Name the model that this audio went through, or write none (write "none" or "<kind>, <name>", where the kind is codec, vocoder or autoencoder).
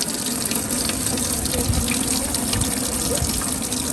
vocoder, BigVGAN v2